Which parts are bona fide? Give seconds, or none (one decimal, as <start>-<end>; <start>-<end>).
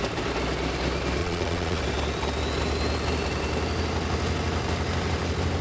0.0-1.2; 1.8-5.6